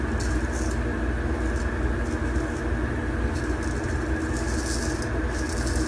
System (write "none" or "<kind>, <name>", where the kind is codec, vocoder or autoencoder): none